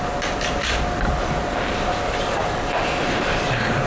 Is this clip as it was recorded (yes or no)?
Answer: yes